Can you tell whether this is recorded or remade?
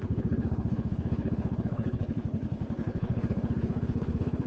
remade